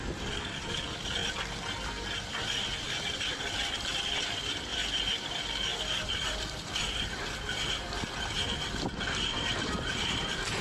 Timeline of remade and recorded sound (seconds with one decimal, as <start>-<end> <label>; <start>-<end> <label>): 0.0-1.2 remade; 1.2-3.1 recorded; 3.1-10.6 remade

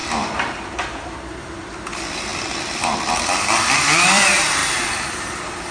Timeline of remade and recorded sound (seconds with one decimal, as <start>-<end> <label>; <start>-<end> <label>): 0.0-1.4 recorded; 1.4-5.7 remade

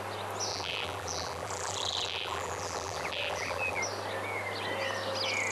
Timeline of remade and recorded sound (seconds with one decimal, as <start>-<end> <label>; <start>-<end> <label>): 0.0-0.5 recorded; 0.5-3.8 remade; 3.8-5.5 recorded